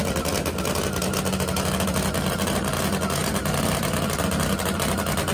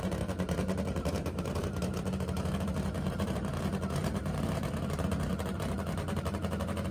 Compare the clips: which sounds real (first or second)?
first